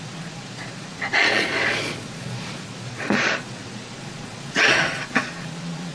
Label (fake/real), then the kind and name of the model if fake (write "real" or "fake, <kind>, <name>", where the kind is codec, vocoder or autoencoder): fake, vocoder, Vocos